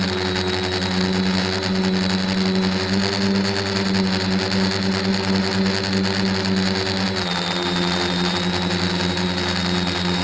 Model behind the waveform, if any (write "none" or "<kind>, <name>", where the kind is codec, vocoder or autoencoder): none